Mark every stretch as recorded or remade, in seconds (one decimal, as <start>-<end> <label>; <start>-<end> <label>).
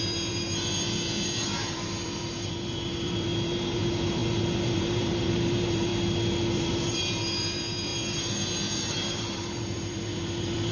0.0-5.9 remade; 5.9-6.5 recorded; 6.5-10.7 remade